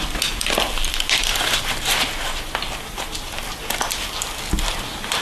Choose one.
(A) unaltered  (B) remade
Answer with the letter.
A